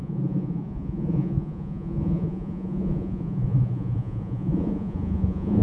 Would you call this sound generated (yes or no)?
yes